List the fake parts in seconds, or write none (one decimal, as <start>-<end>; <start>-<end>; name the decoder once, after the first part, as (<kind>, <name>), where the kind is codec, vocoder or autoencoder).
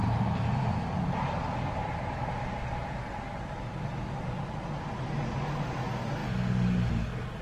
0.0-2.3 (vocoder, BigVGAN v2)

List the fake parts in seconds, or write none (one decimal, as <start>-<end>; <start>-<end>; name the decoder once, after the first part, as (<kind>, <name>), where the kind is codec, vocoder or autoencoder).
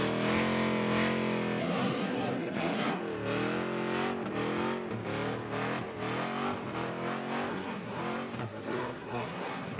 1.6-3.0 (codec, SNAC); 7.5-8.0; 8.4-9.8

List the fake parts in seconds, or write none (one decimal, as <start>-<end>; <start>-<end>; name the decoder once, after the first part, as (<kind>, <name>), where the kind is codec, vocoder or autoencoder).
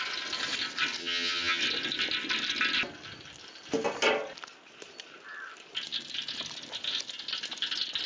1.0-1.6 (vocoder, HiFi-GAN)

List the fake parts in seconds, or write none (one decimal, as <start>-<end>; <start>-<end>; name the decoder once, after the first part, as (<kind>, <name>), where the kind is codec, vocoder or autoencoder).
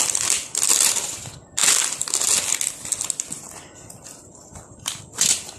none